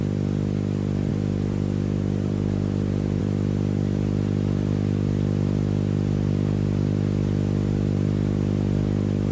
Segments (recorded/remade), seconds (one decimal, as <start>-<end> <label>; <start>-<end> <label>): 0.0-1.1 recorded; 1.1-3.2 remade; 3.2-9.3 recorded